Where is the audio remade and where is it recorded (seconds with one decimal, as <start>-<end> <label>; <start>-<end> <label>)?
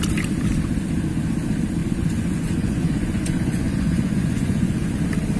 0.0-1.8 recorded; 1.8-5.0 remade; 5.0-5.4 recorded